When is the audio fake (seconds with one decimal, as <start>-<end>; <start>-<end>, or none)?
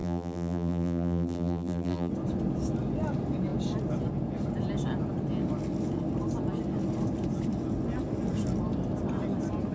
0.0-2.1